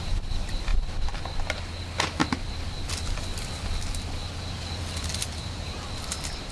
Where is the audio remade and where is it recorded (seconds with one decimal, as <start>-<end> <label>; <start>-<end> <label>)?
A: 0.0-0.7 recorded; 0.7-1.2 remade; 1.2-6.5 recorded